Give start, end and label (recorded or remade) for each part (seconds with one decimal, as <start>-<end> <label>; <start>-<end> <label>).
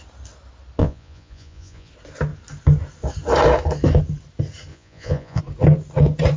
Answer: 0.0-0.8 recorded; 0.8-1.9 remade; 1.9-4.7 recorded; 4.7-5.4 remade; 5.4-6.4 recorded